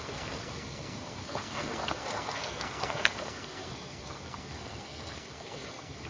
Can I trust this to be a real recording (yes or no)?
no